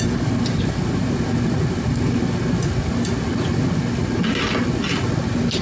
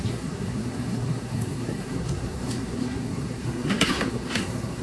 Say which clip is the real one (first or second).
first